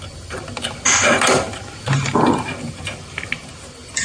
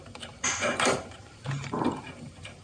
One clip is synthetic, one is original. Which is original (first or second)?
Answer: first